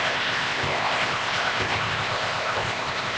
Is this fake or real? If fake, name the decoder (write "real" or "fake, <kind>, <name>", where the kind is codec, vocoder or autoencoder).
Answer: fake, codec, ZipCodec